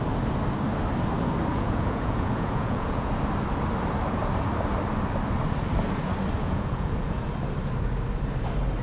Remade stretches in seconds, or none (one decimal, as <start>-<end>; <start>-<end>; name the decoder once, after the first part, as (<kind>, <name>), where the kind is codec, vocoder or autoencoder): 1.5-3.1 (vocoder, Vocos); 6.4-7.3